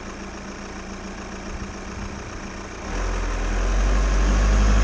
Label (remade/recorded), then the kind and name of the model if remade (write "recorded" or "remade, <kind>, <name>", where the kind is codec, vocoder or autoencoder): recorded